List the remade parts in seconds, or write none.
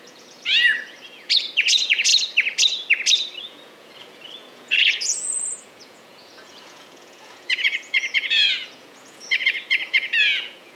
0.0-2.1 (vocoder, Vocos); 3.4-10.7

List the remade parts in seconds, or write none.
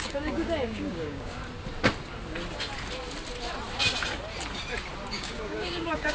0.0-1.4 (codec, DAC); 5.1-6.1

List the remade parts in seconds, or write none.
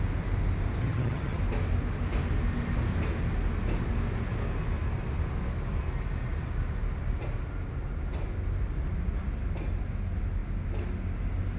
0.8-1.4 (vocoder, HiFi-GAN)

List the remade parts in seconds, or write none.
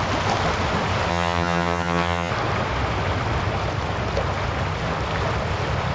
1.1-2.3 (vocoder, HiFi-GAN)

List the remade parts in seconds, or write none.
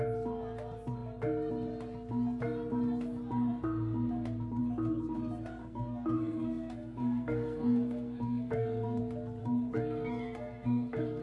5.6-9.0 (codec, SNAC); 9.4-11.2